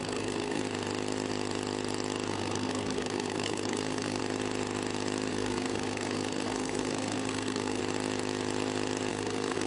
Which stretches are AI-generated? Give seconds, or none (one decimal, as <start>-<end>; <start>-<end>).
0.0-0.6; 2.3-4.2; 5.3-7.8; 9.1-9.7